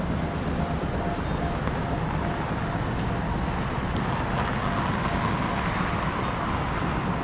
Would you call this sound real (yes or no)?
yes